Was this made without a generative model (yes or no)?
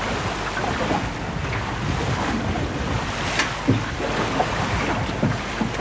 yes